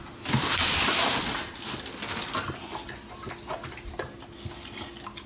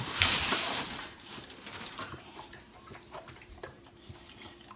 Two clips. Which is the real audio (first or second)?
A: first